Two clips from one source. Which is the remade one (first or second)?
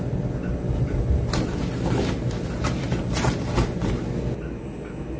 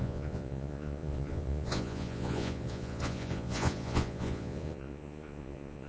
second